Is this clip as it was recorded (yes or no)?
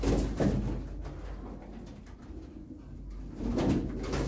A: yes